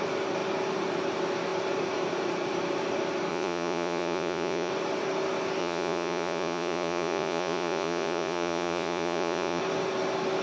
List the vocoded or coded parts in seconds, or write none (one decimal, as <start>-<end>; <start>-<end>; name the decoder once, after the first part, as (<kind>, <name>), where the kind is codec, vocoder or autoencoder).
3.3-4.7 (vocoder, Vocos); 5.6-9.6